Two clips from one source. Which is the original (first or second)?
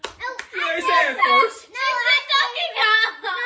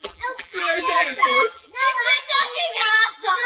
first